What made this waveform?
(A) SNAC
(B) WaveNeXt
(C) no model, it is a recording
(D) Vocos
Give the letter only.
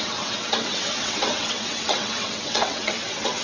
B